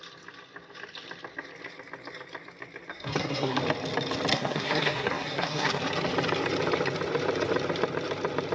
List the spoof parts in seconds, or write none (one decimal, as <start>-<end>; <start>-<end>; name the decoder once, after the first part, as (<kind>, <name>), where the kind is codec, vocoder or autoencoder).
2.9-3.6 (codec, SNAC); 4.3-5.8